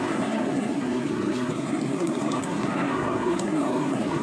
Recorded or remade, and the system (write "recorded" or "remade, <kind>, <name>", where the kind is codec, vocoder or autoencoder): remade, codec, SNAC